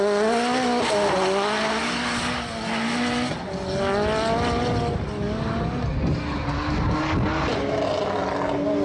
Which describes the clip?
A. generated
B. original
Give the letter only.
B